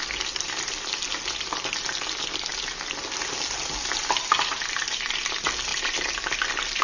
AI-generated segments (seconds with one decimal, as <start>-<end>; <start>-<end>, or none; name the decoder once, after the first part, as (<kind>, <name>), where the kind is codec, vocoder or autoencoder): none